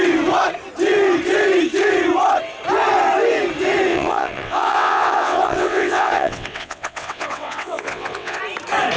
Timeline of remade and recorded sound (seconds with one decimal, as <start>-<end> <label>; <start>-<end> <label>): 0.0-3.9 recorded; 3.9-8.4 remade; 8.4-9.0 recorded